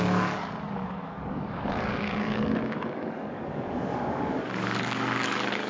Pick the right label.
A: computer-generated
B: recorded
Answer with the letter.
A